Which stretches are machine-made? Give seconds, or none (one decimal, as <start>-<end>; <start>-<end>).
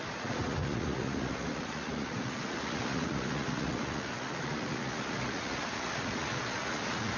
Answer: 0.0-7.2